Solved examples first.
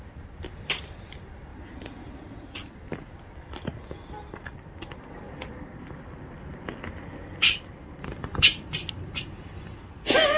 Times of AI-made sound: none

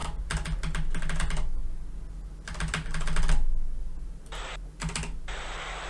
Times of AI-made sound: none

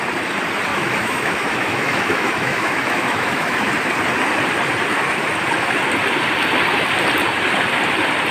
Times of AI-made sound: 0.7-3.7 (autoencoder, DAC-VAE)

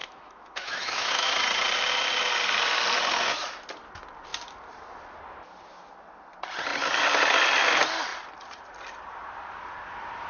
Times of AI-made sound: 0.0-1.3 (autoencoder, DAC-VAE)

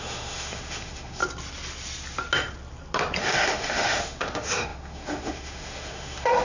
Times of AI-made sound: 0.0-1.2 (autoencoder, DAC-VAE); 3.2-6.4

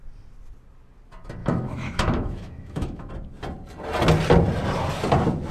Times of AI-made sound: 1.4-3.1 (autoencoder, DAC-VAE)

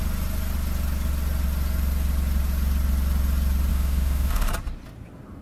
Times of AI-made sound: 3.7-4.5 (autoencoder, DAC-VAE)